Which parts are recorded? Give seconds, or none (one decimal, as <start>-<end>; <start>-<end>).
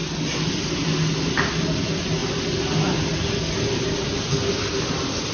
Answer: 0.0-5.3